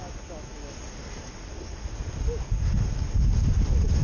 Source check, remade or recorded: recorded